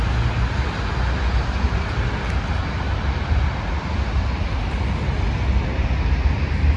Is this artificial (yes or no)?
no